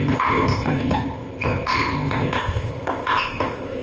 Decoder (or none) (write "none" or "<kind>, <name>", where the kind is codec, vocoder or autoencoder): codec, ZipCodec